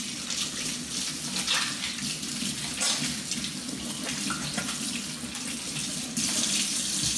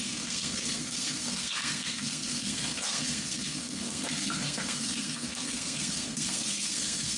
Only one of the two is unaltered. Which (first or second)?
first